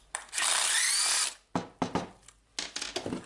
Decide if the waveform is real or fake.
real